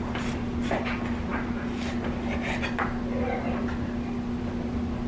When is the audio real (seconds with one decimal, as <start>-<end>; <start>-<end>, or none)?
0.0-5.1